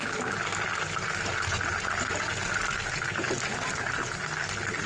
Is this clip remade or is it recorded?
recorded